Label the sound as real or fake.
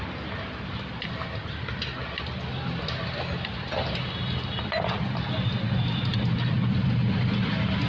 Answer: real